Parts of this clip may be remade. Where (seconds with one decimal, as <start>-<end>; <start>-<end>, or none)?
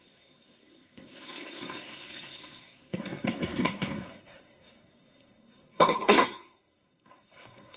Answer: 0.0-7.8